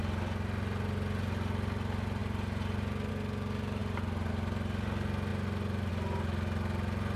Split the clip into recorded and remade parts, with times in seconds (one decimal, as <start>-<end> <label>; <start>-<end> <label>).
0.0-7.2 recorded